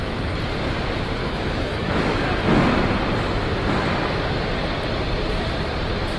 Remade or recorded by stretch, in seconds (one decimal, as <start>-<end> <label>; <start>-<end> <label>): 0.0-1.2 recorded; 1.2-2.0 remade; 2.0-6.2 recorded

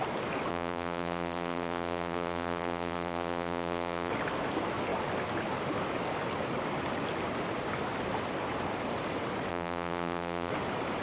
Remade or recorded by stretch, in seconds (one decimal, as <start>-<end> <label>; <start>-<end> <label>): 0.0-0.5 recorded; 0.5-4.1 remade; 4.1-9.5 recorded; 9.5-10.5 remade; 10.5-11.0 recorded

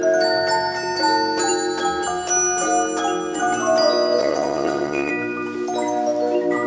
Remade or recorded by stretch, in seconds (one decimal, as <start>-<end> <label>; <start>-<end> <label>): 0.0-4.2 recorded; 4.2-5.1 remade; 5.1-6.7 recorded

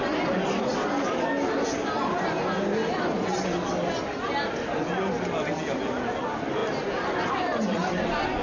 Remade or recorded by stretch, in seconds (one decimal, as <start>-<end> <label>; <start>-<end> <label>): 0.0-8.4 recorded